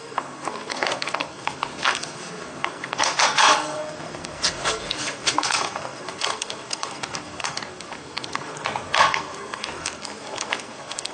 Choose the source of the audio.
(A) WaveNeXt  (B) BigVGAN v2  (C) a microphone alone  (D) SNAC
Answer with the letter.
D